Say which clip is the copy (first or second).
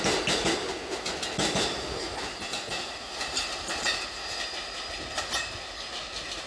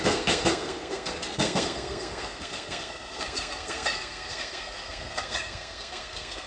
second